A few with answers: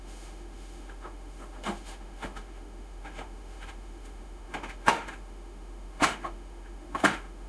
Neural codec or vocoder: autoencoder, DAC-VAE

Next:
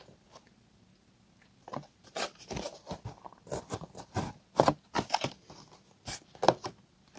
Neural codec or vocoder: none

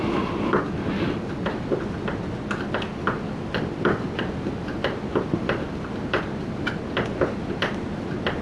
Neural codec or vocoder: none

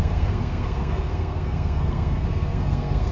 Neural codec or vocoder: codec, SNAC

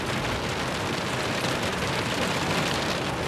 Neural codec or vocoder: none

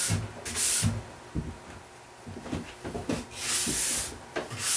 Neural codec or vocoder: none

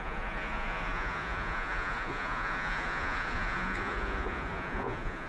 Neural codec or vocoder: vocoder, Vocos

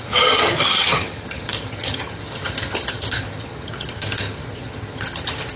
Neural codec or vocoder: vocoder, HiFi-GAN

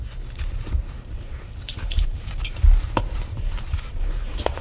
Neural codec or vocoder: vocoder, BigVGAN v2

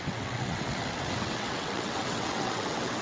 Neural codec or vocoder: vocoder, WaveNeXt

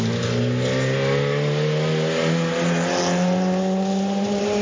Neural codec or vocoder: none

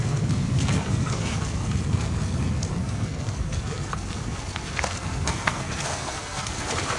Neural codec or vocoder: codec, SNAC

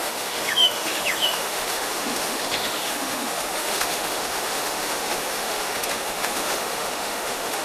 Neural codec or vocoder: autoencoder, DAC-VAE